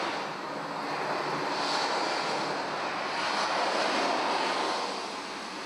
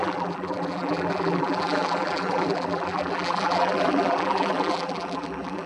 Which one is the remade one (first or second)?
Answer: second